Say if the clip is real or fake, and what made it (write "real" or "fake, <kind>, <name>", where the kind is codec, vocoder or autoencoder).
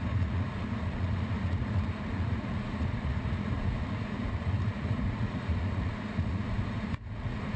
fake, vocoder, Vocos